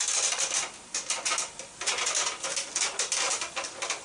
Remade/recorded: recorded